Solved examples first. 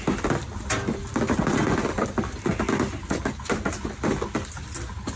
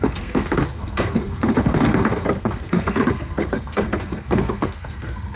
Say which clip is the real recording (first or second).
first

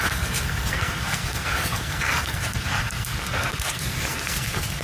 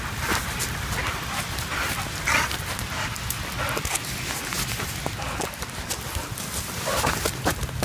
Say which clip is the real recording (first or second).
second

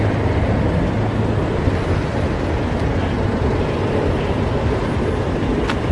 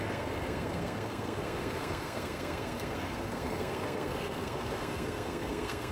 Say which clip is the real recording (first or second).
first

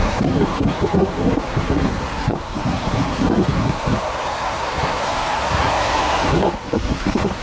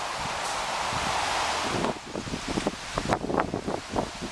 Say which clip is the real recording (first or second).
second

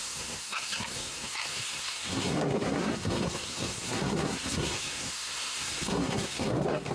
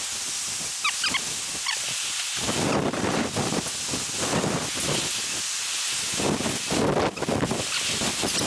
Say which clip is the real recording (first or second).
second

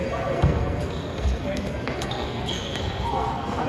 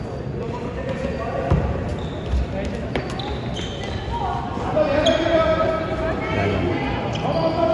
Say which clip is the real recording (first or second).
second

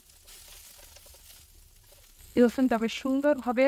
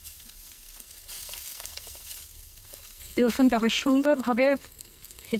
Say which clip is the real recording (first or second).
first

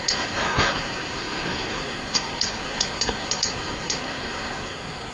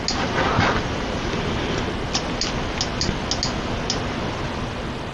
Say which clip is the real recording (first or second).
second